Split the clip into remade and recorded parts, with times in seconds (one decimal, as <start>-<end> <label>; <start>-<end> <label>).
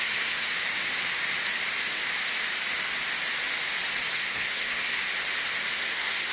0.0-0.5 remade; 0.5-4.1 recorded; 4.1-5.0 remade; 5.0-5.7 recorded; 5.7-6.3 remade